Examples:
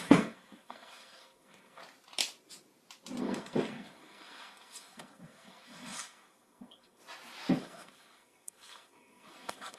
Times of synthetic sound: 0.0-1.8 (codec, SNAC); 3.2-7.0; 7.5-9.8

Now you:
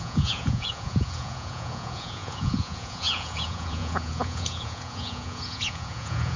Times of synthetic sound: 0.0-6.4 (vocoder, Vocos)

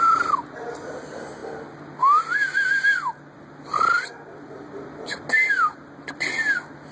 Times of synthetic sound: none